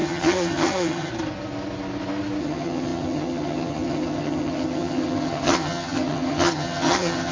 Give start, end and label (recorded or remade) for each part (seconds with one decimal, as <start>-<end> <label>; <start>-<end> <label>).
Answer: 0.0-1.1 remade; 1.1-2.4 recorded; 2.4-7.3 remade